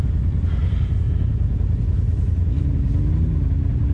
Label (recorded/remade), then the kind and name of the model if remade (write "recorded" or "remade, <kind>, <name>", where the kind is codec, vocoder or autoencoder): recorded